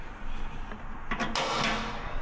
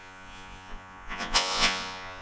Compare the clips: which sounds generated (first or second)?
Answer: second